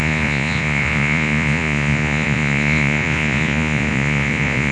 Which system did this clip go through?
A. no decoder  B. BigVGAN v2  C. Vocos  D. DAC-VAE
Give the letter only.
C